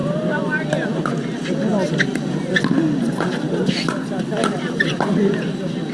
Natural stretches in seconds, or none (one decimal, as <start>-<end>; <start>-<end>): 0.0-5.9